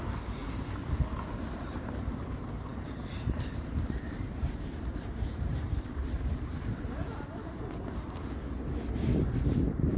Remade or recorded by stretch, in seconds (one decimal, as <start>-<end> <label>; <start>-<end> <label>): 0.0-0.4 remade; 0.4-1.6 recorded; 1.6-7.0 remade; 7.0-9.4 recorded; 9.4-10.0 remade